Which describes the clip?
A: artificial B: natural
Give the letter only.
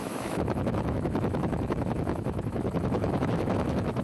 A